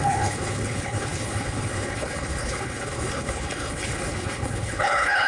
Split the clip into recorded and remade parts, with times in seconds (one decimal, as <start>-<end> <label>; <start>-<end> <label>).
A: 0.0-5.3 remade